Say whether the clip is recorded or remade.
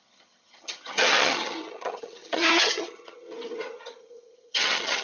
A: remade